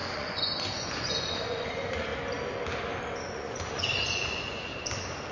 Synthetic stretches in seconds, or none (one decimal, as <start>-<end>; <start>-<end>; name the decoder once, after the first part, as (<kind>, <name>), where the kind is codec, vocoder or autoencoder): 0.0-2.1 (vocoder, Vocos); 3.1-4.7

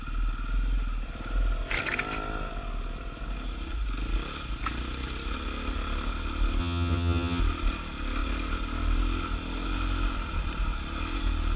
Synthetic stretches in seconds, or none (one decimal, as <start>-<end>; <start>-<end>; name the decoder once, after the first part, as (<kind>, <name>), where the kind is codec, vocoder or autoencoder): 6.6-7.4 (vocoder, HiFi-GAN)

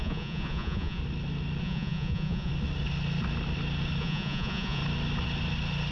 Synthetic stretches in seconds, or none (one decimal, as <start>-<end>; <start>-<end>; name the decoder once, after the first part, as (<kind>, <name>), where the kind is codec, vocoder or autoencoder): 0.0-1.0 (vocoder, Vocos); 1.6-2.5; 4.0-4.8

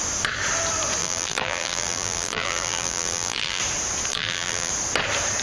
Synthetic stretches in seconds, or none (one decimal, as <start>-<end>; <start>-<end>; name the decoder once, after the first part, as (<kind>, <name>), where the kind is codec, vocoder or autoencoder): 1.0-3.6 (vocoder, BigVGAN v2); 4.1-4.7

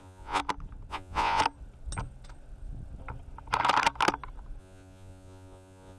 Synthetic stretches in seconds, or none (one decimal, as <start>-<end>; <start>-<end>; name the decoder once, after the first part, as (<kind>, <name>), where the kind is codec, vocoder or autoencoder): 0.0-0.4 (vocoder, Vocos); 0.9-1.4; 4.6-6.0

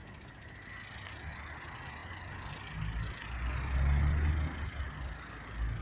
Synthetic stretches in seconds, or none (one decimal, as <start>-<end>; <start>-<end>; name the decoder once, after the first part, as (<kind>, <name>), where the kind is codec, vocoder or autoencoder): none